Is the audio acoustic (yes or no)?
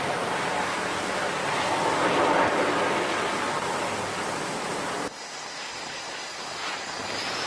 yes